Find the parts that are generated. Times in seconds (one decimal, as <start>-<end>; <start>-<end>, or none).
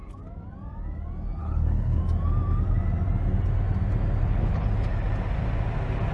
1.4-2.0; 4.2-4.7